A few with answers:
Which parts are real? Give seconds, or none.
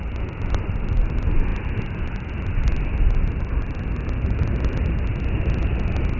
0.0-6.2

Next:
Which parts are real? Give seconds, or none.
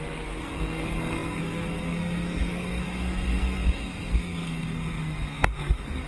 none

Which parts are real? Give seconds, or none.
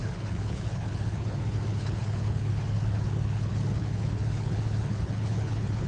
none